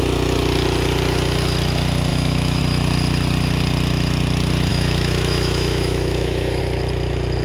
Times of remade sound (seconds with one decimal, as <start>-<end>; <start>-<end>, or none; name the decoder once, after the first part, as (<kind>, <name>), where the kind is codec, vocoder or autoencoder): 2.1-2.6 (autoencoder, DAC-VAE); 4.7-6.6